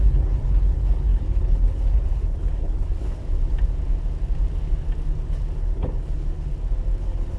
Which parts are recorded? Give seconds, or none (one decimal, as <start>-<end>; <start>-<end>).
3.2-5.6; 6.5-7.0